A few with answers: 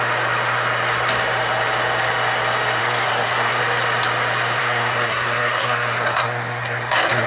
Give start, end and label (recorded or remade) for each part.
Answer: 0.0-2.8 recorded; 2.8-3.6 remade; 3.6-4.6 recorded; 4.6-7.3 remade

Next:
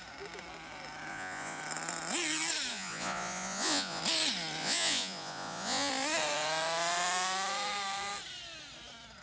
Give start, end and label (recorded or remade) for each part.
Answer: 0.0-1.1 recorded; 1.1-1.6 remade; 1.6-2.7 recorded; 2.7-4.0 remade; 4.0-4.6 recorded; 4.6-5.9 remade; 5.9-9.2 recorded